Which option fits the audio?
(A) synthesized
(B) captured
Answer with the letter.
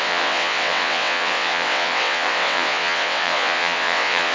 A